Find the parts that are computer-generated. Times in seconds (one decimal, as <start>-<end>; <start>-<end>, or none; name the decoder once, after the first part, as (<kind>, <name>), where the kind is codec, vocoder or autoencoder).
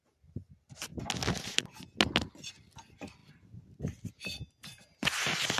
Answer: 3.2-4.0 (vocoder, BigVGAN v2)